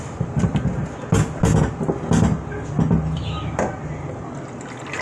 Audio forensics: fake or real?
real